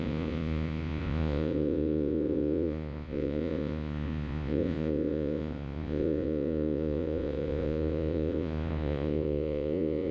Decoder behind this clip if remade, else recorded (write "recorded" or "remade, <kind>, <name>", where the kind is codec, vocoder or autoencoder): remade, vocoder, Vocos